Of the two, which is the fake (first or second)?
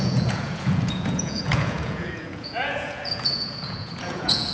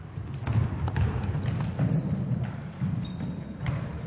first